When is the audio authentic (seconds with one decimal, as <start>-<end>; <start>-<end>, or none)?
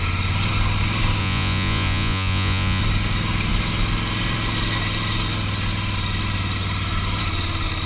0.0-1.2; 2.8-7.9